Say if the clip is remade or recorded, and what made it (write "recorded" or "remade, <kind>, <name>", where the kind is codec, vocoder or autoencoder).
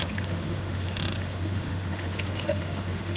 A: remade, autoencoder, DAC-VAE